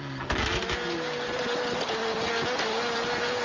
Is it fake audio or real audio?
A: real